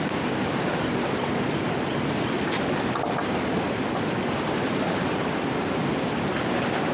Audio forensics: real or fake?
real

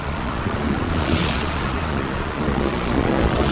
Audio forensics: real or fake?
fake